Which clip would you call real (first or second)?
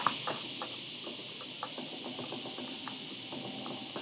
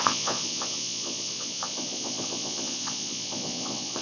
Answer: first